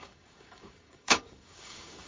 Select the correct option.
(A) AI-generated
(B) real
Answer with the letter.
A